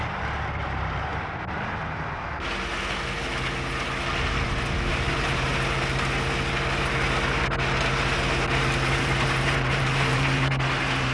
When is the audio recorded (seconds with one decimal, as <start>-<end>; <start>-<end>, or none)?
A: 1.1-4.9; 5.5-8.9